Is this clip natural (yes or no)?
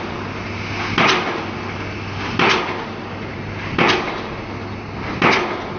yes